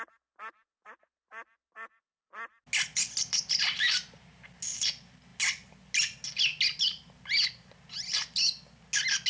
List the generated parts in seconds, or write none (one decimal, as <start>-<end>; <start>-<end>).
none